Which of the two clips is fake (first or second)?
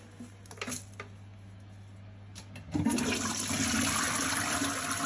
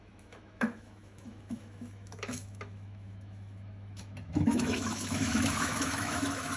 second